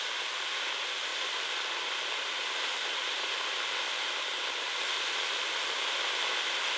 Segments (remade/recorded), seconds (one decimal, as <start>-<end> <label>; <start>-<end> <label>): 0.0-6.8 recorded